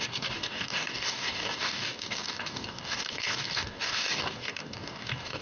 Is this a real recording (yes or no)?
no